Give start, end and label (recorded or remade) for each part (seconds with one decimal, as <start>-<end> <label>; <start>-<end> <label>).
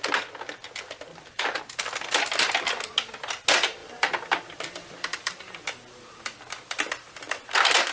0.0-1.1 recorded; 1.1-1.6 remade; 1.6-3.8 recorded; 3.8-7.5 remade; 7.5-7.9 recorded